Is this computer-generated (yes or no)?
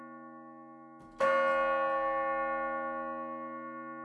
no